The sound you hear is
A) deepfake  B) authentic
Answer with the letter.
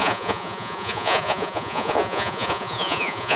A